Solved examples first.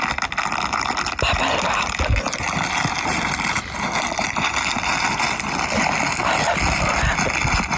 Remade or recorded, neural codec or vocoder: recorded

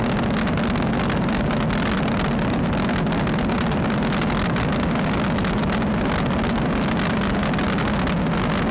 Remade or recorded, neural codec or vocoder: recorded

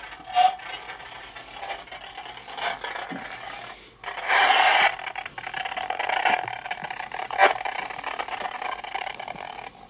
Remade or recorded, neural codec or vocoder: recorded